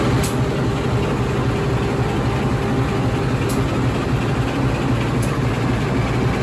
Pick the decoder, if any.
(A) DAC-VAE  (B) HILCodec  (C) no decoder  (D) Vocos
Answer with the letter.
C